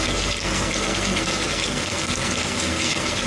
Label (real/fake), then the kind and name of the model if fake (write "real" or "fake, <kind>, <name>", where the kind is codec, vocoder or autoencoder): fake, codec, SNAC